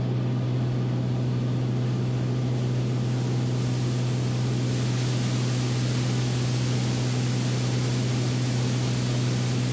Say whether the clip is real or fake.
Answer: real